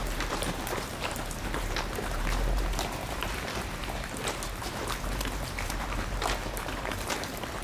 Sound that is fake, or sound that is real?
fake